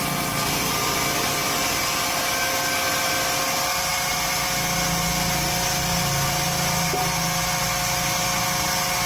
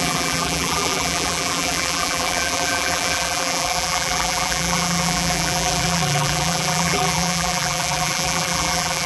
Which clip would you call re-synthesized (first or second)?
second